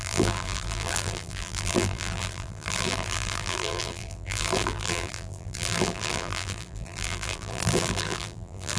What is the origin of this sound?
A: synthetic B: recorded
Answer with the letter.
A